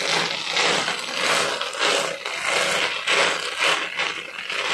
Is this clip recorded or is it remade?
recorded